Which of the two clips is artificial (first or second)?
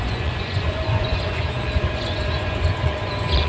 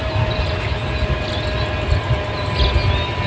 first